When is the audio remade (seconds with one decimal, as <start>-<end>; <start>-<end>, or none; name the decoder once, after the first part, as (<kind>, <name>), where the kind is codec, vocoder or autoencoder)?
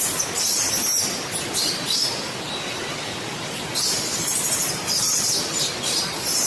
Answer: none